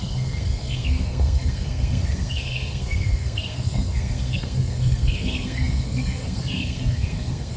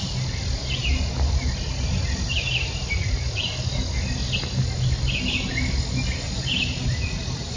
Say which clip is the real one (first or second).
second